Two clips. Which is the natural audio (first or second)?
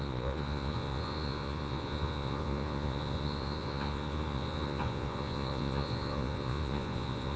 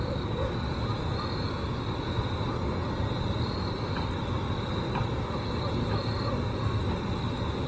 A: second